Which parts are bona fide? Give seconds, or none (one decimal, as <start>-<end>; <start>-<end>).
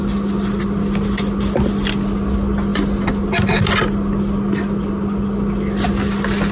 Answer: 0.0-6.5